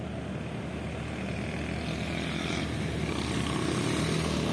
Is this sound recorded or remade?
recorded